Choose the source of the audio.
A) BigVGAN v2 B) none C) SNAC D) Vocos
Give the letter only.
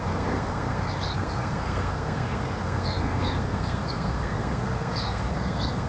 C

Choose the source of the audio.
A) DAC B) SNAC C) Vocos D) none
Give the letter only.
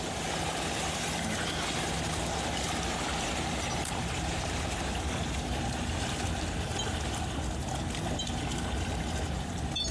D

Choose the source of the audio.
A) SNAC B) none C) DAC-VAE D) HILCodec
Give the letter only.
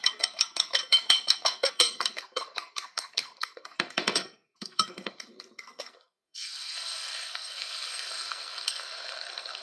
A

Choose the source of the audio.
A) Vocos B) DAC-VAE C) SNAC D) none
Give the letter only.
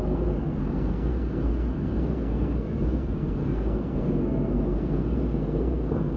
C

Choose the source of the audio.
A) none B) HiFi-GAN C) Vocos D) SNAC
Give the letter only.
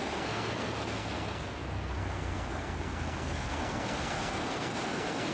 D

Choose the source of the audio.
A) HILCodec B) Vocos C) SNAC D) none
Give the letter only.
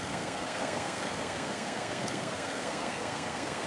C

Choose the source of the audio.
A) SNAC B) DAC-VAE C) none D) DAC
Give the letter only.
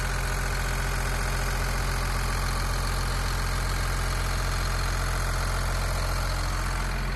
C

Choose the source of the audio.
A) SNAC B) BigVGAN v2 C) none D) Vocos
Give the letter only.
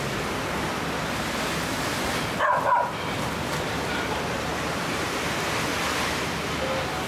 C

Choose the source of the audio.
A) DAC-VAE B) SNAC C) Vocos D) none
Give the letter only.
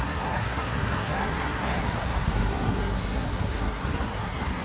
B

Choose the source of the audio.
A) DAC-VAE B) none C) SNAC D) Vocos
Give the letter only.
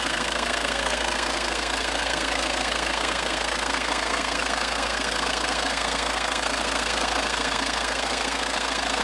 C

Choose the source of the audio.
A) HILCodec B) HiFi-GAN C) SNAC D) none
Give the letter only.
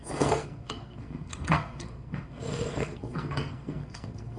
C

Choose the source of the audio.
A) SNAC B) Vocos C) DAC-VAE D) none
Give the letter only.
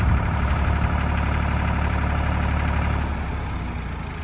D